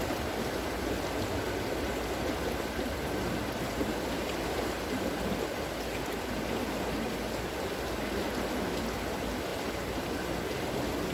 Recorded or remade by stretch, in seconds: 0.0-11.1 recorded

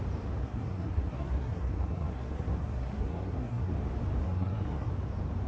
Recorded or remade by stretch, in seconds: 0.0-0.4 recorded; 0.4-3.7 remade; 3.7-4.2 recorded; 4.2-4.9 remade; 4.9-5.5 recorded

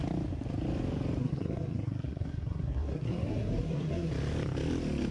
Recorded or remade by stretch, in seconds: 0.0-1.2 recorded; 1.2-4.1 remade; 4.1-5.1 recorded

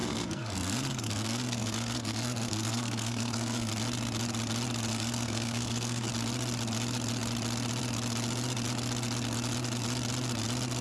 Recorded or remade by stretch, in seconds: 0.0-3.7 remade; 3.7-4.9 recorded; 4.9-6.1 remade; 6.1-10.8 recorded